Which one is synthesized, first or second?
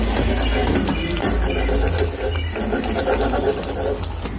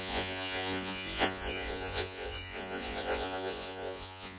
second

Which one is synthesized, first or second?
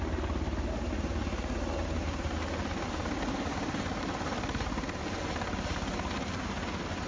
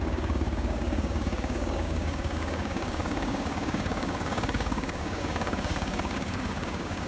second